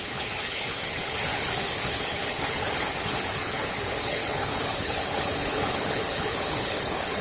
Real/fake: fake